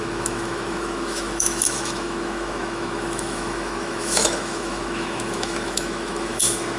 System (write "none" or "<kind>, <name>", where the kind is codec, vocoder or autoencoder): autoencoder, DAC-VAE